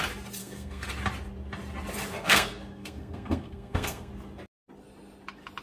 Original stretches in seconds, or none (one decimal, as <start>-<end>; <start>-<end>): 0.0-0.4; 0.9-2.1; 4.1-5.6